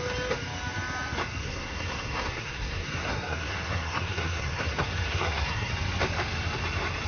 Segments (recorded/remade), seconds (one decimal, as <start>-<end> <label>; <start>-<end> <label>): 0.0-1.4 recorded; 1.4-5.7 remade; 5.7-7.1 recorded